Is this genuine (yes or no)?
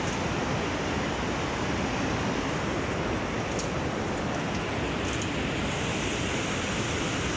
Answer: yes